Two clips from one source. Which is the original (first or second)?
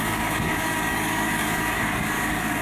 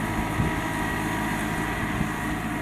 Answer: second